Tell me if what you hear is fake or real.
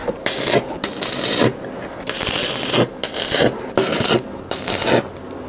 real